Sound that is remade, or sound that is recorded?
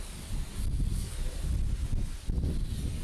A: recorded